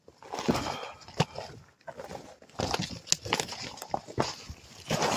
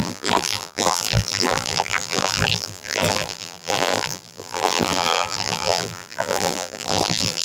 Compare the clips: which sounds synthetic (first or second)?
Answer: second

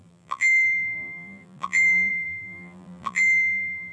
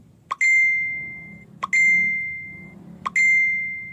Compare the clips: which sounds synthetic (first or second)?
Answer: first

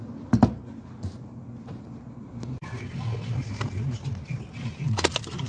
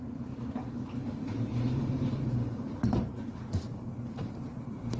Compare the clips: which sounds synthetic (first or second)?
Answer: second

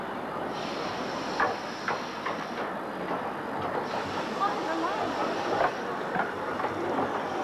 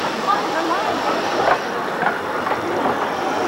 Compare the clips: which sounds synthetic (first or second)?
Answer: second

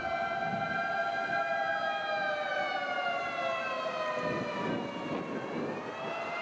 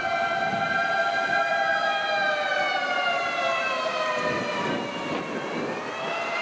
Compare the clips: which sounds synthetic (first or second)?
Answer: second